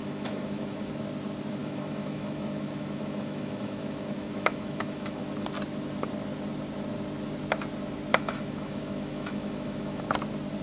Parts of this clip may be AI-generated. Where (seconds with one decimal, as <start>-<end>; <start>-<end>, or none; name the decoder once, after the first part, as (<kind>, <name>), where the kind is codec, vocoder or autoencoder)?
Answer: 0.0-0.9 (autoencoder, DAC-VAE); 1.6-5.2; 8.1-10.0